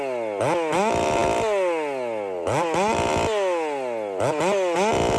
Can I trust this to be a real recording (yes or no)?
yes